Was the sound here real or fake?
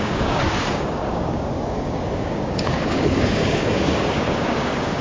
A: fake